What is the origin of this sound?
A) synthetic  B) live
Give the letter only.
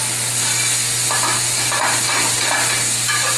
B